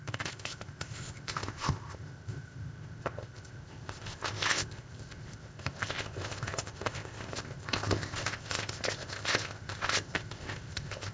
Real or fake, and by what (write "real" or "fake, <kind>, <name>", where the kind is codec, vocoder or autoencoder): fake, codec, ZipCodec